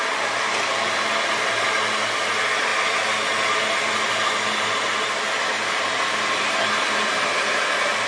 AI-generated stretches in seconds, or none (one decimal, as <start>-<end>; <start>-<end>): none